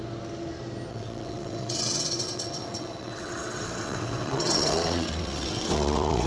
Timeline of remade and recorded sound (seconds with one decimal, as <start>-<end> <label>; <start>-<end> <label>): 0.0-0.9 recorded; 0.9-6.3 remade